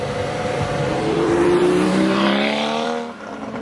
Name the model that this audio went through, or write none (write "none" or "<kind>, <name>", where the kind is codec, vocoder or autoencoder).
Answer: vocoder, BigVGAN v2